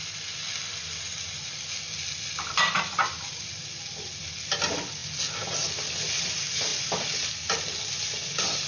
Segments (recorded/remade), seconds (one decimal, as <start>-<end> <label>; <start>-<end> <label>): 0.0-8.7 recorded